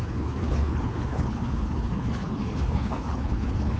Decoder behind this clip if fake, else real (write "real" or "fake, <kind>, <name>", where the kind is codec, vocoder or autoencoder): fake, codec, HILCodec